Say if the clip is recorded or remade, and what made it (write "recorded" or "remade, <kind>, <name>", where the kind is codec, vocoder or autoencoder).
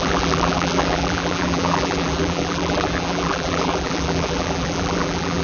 remade, vocoder, BigVGAN v2